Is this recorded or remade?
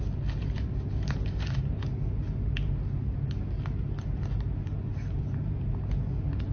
recorded